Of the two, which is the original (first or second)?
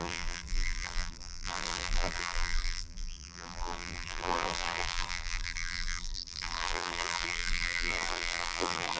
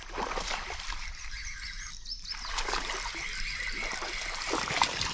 second